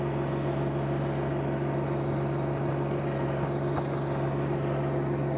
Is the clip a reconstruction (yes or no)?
no